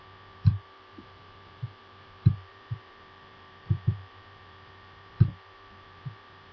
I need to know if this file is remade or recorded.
remade